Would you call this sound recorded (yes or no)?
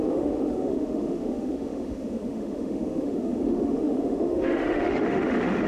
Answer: no